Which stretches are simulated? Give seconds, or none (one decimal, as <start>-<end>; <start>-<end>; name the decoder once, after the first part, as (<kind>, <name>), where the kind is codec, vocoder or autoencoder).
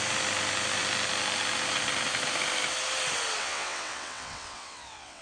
3.4-5.2 (vocoder, WaveNeXt)